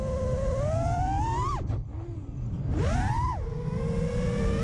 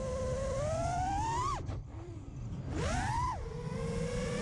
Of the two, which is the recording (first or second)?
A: first